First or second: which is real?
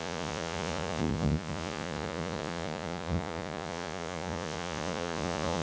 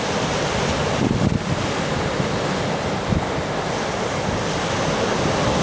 second